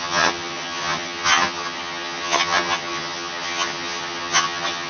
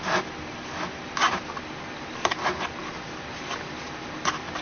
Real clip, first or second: second